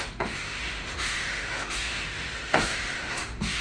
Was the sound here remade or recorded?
remade